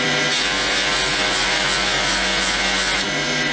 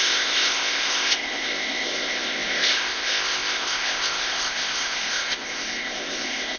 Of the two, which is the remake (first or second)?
second